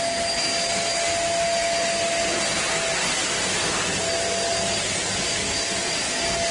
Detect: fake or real real